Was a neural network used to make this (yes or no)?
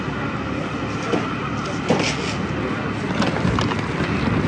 no